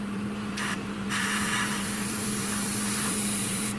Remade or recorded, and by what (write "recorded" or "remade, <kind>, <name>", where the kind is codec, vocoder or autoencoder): remade, vocoder, BigVGAN v2